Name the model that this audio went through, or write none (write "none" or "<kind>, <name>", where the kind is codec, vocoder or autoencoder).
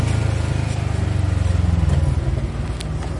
none